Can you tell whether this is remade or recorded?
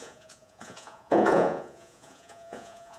remade